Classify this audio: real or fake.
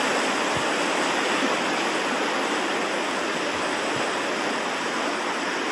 real